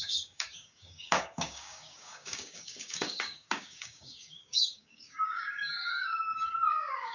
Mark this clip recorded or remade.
remade